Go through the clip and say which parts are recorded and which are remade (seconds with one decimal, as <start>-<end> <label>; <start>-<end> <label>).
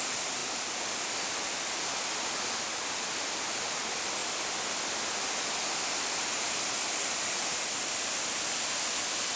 0.0-0.4 recorded; 0.4-1.8 remade; 1.8-4.2 recorded; 4.2-8.3 remade; 8.3-9.4 recorded